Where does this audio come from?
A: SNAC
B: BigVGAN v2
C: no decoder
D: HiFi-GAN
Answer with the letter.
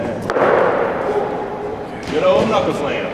B